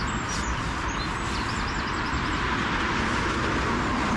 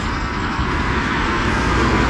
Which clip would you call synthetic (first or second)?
second